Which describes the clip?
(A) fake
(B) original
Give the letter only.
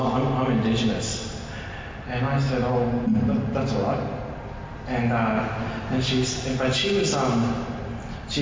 B